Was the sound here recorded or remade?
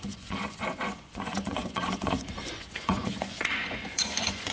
remade